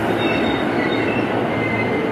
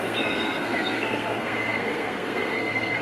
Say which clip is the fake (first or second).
second